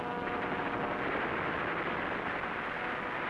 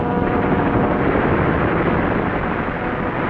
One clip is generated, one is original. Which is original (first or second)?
first